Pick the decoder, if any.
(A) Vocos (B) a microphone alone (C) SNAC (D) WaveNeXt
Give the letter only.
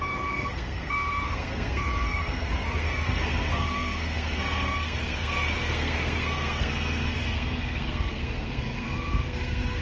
C